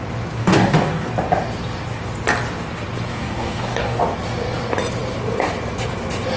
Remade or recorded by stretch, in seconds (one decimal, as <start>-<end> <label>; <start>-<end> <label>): 0.0-0.4 recorded; 0.4-1.1 remade; 1.1-3.1 recorded; 3.1-4.0 remade; 4.0-6.4 recorded